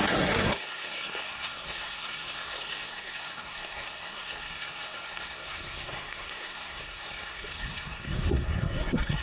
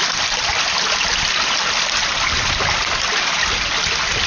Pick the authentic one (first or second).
second